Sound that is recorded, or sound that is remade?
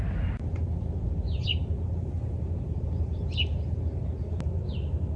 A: recorded